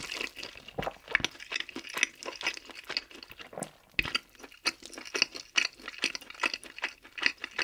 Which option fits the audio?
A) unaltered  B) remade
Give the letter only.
A